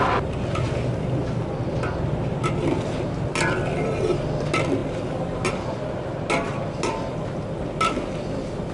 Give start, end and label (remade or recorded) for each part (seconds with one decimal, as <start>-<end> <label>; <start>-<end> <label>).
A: 0.0-8.7 recorded